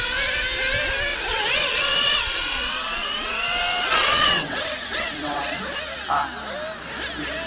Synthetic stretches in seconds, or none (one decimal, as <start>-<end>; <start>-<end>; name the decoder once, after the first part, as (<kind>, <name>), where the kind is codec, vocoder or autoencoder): 1.1-5.6 (vocoder, WaveNeXt)